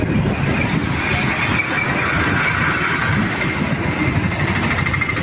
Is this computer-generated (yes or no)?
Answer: no